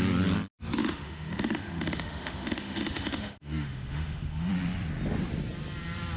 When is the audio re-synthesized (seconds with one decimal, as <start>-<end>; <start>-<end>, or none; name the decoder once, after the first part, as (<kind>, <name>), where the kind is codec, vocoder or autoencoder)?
0.8-4.5 (autoencoder, DAC-VAE)